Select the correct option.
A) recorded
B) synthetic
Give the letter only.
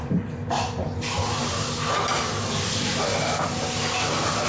A